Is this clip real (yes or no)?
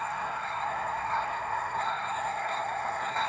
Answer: no